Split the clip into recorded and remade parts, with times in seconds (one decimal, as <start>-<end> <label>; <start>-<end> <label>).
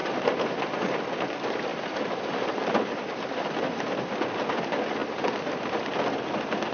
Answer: 0.0-1.0 remade; 1.0-1.7 recorded; 1.7-4.4 remade; 4.4-5.0 recorded; 5.0-5.9 remade; 5.9-6.7 recorded